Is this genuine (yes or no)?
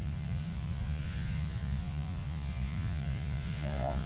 no